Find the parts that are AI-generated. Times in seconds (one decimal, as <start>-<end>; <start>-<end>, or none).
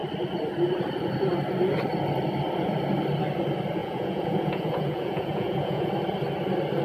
3.8-5.9